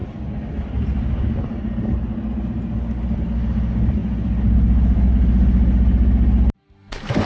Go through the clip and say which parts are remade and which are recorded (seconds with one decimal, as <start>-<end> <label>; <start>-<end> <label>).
0.0-7.3 recorded